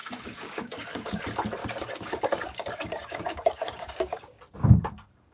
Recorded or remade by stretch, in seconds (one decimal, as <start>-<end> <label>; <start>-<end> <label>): 0.0-1.2 remade; 1.2-1.6 recorded; 1.6-4.4 remade; 4.4-5.3 recorded